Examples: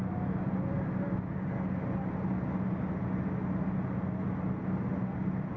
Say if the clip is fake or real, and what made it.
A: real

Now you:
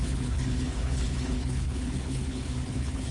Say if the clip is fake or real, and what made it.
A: fake, codec, HILCodec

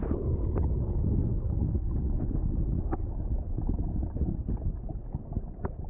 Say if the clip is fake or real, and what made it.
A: real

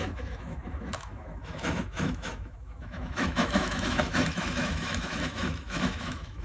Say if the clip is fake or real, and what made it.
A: fake, autoencoder, DAC-VAE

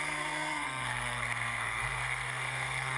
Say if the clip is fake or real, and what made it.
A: fake, codec, SNAC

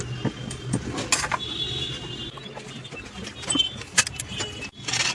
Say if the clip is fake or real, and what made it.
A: real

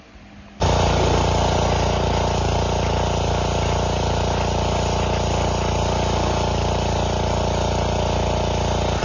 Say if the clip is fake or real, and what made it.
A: real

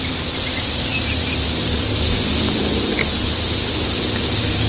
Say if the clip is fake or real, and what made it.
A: fake, vocoder, BigVGAN v2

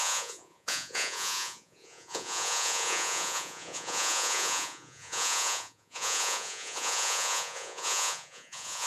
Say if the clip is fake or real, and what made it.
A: fake, vocoder, Vocos